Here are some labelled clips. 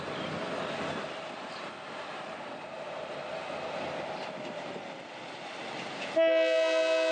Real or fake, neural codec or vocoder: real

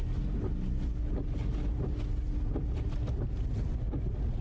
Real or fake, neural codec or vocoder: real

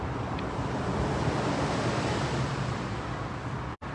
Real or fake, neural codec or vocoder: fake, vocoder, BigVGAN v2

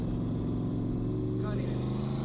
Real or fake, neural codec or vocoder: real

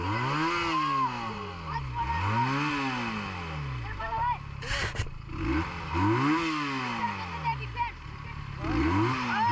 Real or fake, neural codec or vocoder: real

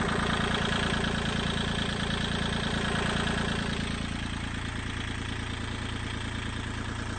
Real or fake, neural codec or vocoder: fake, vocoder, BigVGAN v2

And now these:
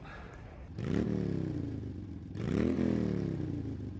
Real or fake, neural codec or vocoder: fake, vocoder, BigVGAN v2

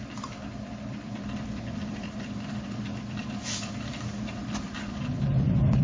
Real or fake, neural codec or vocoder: fake, vocoder, BigVGAN v2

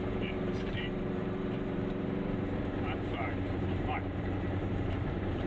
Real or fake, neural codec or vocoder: fake, vocoder, BigVGAN v2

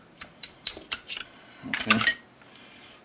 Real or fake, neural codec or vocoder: fake, vocoder, BigVGAN v2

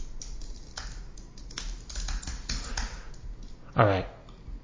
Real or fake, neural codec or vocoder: real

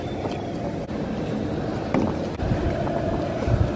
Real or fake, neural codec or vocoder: real